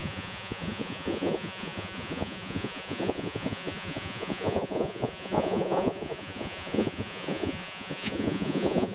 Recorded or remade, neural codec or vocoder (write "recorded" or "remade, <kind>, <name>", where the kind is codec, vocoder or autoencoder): remade, vocoder, Vocos